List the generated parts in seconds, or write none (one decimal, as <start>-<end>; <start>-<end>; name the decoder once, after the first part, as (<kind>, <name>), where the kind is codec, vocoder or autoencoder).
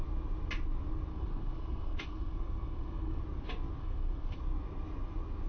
1.1-3.2 (codec, SNAC); 3.8-4.4